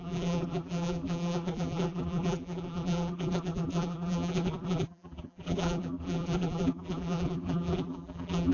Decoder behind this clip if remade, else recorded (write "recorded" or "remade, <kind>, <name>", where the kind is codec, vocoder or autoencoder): remade, vocoder, BigVGAN v2